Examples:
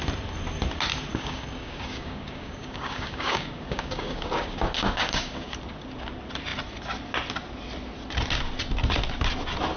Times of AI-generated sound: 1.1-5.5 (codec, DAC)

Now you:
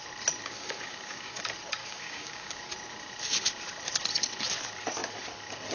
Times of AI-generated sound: 0.4-1.4 (codec, DAC); 1.8-2.6

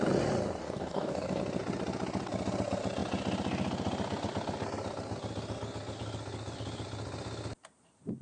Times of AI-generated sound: 0.6-1.4 (codec, DAC)

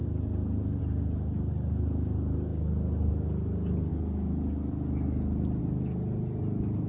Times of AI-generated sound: none

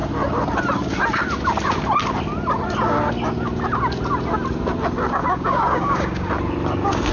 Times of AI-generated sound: 5.2-6.3 (codec, DAC)

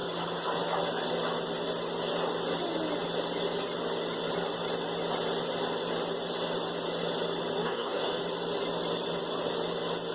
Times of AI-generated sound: 7.6-8.2 (codec, DAC)

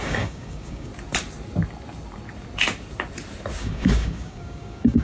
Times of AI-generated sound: 0.0-0.9 (codec, DAC); 3.6-5.0

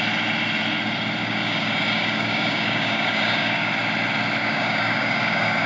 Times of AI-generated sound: 1.2-3.7 (codec, DAC); 4.4-5.7